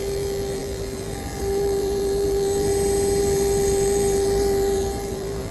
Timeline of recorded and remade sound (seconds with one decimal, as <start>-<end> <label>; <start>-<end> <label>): 0.0-2.7 remade; 2.7-3.2 recorded; 3.2-5.5 remade